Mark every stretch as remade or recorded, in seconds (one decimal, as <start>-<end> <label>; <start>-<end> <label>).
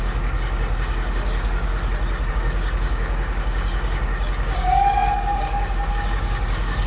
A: 0.0-1.7 remade; 1.7-2.3 recorded; 2.3-6.9 remade